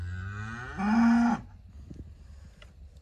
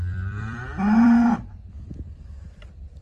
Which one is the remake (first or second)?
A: second